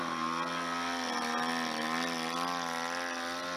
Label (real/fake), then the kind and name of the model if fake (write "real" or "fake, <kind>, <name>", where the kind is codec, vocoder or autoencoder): real